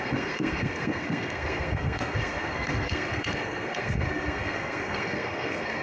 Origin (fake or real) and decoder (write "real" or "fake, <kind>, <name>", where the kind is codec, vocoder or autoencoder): fake, codec, SNAC